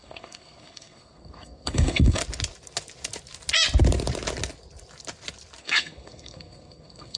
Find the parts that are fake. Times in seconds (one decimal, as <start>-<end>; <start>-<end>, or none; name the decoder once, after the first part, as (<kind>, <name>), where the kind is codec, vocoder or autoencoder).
0.0-2.2 (codec, SNAC); 5.6-7.2